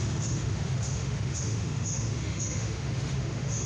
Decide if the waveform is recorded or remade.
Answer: remade